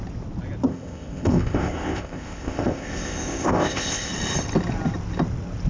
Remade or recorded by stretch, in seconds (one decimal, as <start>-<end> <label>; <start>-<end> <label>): 0.0-0.7 recorded; 0.7-4.1 remade; 4.1-5.7 recorded

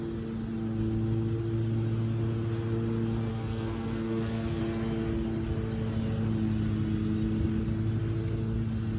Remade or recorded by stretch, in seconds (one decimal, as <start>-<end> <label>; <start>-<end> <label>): 0.0-3.3 recorded; 3.3-4.6 remade; 4.6-9.0 recorded

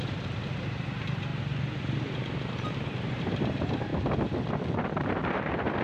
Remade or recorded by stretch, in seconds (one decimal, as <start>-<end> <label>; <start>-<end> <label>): 0.0-3.9 remade; 3.9-4.9 recorded; 4.9-5.8 remade

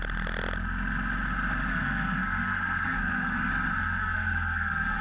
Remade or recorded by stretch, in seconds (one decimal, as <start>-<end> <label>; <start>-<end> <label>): 0.0-1.7 recorded; 1.7-3.5 remade; 3.5-4.0 recorded; 4.0-5.0 remade

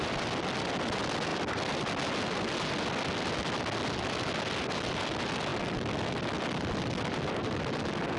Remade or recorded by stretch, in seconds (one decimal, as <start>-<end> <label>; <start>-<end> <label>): 0.0-1.3 recorded; 1.3-1.9 remade; 1.9-8.2 recorded

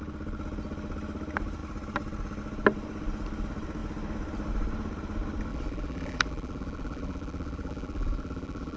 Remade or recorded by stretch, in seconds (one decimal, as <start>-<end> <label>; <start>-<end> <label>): 0.0-5.5 recorded; 5.5-8.8 remade

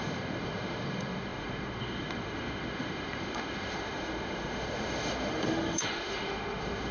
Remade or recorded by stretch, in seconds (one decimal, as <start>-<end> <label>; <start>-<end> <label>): 0.0-6.9 remade

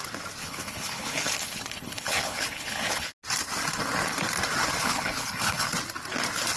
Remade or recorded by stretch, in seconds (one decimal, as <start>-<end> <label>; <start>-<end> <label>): 0.0-0.4 recorded; 0.4-3.1 remade; 3.1-4.8 recorded; 4.8-5.7 remade; 5.7-6.6 recorded